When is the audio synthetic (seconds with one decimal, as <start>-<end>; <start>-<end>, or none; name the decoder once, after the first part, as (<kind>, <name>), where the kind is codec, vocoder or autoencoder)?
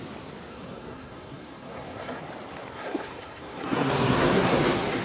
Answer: 0.5-2.2 (codec, SNAC); 2.7-5.0